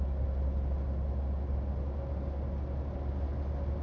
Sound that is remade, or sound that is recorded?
recorded